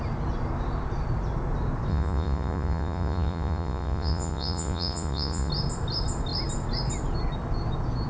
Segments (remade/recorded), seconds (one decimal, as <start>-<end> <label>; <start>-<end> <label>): 0.0-1.9 recorded; 1.9-5.5 remade; 5.5-8.1 recorded